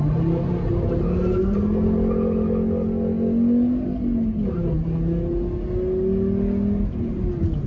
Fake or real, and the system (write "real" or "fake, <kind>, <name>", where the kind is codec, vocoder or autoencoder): real